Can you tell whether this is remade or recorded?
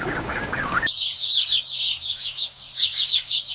remade